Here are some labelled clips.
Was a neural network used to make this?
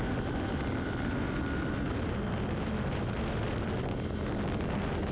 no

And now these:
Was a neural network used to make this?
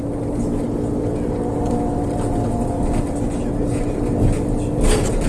no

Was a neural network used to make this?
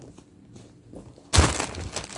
no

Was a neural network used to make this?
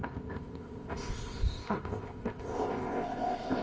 yes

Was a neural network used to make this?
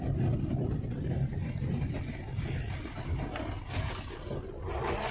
no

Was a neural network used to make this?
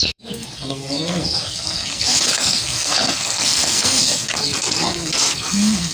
yes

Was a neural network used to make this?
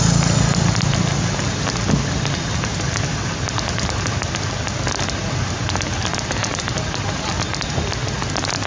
no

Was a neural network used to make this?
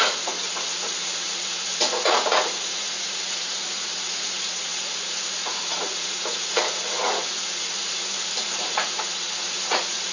yes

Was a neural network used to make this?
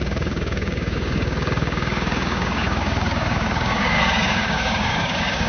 yes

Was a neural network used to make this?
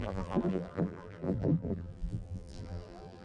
yes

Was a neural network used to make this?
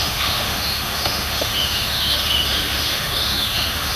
yes